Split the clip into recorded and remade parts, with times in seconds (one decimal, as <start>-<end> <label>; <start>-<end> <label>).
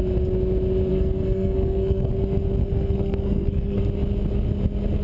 0.0-0.9 recorded; 0.9-2.1 remade; 2.1-2.6 recorded; 2.6-3.8 remade; 3.8-5.0 recorded